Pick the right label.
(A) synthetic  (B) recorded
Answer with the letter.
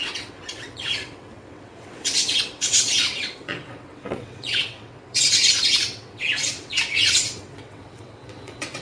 A